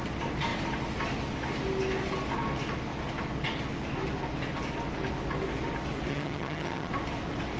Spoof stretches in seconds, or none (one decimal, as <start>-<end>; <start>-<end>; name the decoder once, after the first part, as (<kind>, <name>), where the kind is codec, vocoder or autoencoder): 6.1-6.9 (vocoder, HiFi-GAN)